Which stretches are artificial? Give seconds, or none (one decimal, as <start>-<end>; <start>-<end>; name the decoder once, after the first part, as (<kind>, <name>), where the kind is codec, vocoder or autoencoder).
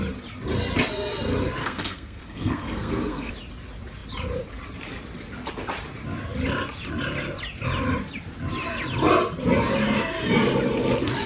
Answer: 1.6-3.3 (codec, SNAC)